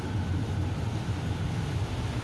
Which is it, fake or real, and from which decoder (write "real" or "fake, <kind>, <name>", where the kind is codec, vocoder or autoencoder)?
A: real